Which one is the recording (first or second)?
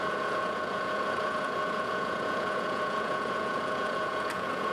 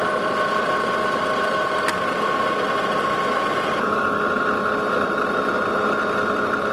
second